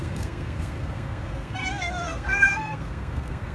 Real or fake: fake